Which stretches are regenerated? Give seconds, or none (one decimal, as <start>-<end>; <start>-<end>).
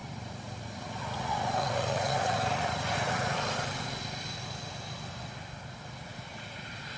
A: 0.0-3.4; 6.1-7.0